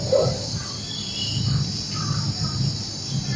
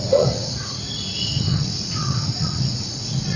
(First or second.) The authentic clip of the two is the first